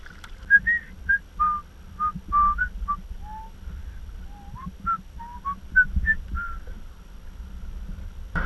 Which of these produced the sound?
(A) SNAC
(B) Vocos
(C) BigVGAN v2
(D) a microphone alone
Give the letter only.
D